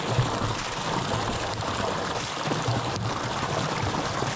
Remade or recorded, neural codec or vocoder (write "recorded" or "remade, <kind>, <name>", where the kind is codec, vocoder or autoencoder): recorded